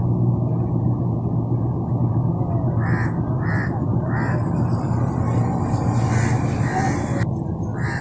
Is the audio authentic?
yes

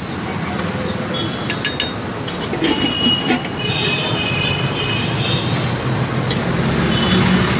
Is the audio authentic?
yes